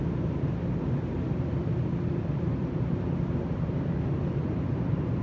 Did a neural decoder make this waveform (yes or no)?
no